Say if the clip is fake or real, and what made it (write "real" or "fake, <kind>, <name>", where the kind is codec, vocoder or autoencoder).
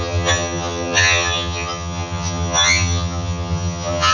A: fake, vocoder, HiFi-GAN